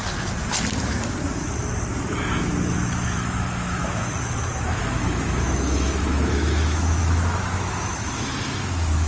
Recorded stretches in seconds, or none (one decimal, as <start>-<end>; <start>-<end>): 0.0-2.7